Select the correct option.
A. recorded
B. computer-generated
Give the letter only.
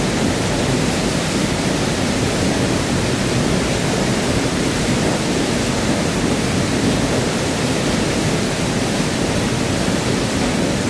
A